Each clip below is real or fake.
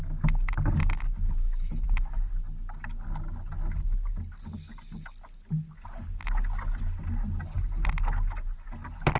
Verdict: real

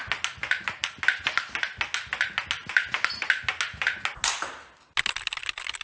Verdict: real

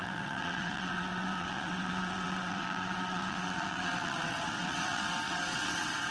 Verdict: fake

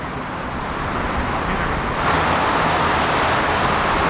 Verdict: real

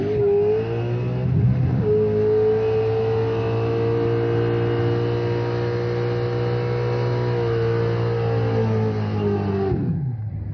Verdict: real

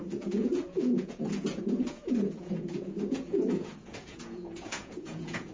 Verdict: fake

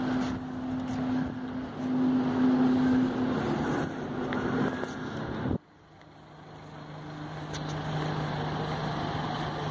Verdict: real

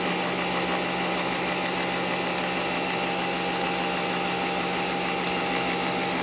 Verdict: real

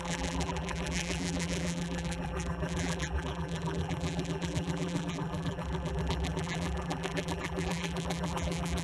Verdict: fake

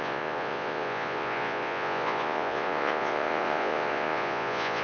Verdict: fake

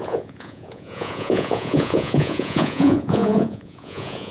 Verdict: fake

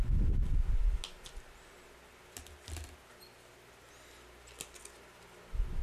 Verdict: real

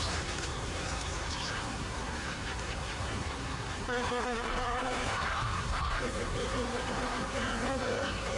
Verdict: fake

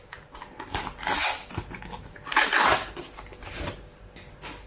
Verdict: real